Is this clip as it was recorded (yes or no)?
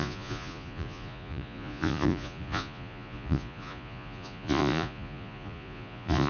no